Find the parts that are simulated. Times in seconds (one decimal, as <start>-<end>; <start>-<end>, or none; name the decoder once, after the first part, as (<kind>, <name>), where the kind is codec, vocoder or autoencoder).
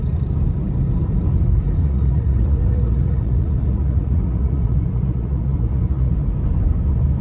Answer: 1.8-6.1 (vocoder, Vocos)